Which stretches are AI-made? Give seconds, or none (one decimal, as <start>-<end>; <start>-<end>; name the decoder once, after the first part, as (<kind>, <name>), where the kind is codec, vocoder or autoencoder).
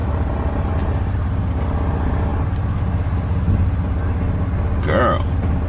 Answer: 0.0-0.7 (vocoder, BigVGAN v2)